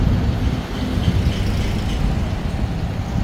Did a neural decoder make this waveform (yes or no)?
no